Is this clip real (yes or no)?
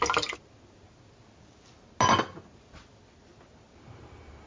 yes